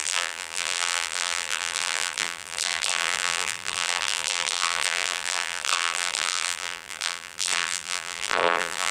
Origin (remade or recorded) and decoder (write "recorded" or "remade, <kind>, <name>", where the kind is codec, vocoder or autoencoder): remade, vocoder, BigVGAN v2